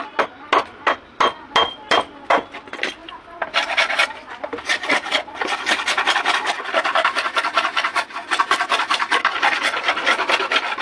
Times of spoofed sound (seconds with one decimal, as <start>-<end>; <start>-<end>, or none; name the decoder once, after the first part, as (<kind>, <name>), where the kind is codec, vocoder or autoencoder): none